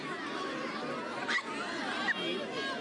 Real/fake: real